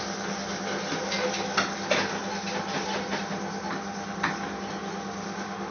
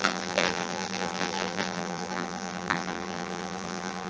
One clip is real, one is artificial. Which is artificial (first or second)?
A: second